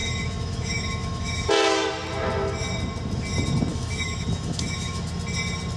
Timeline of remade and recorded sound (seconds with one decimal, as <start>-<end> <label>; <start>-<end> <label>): 0.0-1.5 remade; 1.5-3.7 recorded; 3.7-5.1 remade; 5.1-5.8 recorded